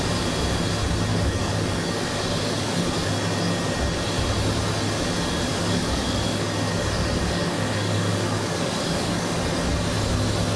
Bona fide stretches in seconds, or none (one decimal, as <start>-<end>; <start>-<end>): 0.0-1.1; 3.1-5.5; 9.4-10.6